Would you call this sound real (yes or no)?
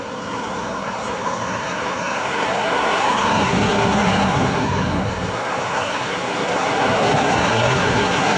no